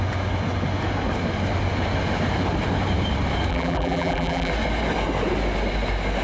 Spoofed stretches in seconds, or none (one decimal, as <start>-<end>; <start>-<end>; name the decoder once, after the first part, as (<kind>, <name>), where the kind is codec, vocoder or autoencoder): 3.5-4.5 (vocoder, BigVGAN v2)